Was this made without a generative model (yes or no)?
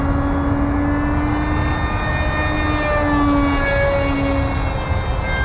yes